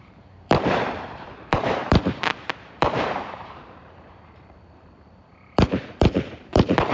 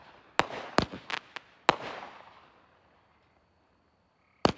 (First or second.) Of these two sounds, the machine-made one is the first